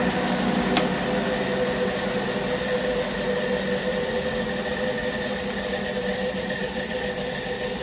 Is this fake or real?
real